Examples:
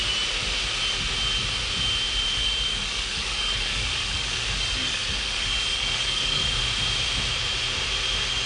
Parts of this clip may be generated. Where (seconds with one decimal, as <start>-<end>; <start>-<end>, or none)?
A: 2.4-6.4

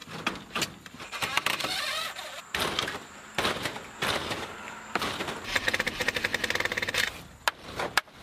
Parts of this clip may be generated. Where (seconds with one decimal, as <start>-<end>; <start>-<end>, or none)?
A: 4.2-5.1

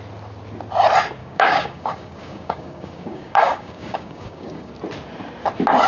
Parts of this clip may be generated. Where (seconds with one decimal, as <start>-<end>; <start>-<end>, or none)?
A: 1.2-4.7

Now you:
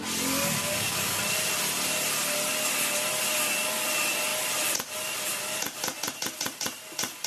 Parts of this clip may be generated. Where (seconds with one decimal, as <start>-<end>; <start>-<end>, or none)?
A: 0.6-1.2

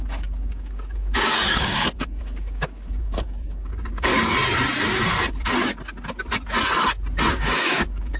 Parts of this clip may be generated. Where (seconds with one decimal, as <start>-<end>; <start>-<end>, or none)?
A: 0.0-4.1; 7.3-8.2